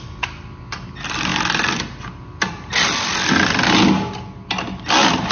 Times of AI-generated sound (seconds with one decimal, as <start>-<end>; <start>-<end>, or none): none